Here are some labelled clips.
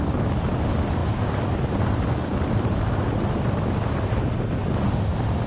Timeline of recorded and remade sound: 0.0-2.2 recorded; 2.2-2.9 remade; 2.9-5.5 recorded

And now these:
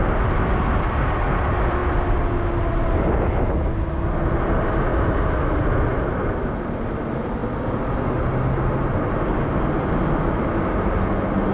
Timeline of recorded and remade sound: 0.0-11.5 recorded

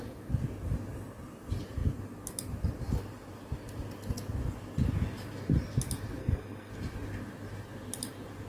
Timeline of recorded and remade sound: 0.0-6.2 recorded; 6.2-6.7 remade; 6.7-8.5 recorded

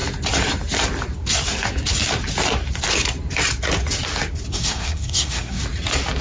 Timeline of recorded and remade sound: 0.0-4.5 recorded; 4.5-5.6 remade; 5.6-6.2 recorded